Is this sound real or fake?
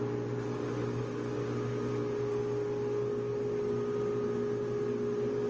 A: real